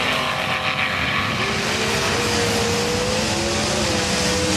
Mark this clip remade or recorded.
recorded